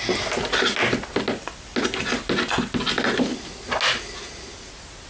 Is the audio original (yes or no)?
yes